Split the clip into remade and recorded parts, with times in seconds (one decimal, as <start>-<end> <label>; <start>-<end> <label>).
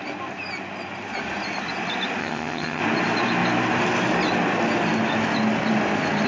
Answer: 0.0-2.2 recorded; 2.2-2.8 remade; 2.8-6.3 recorded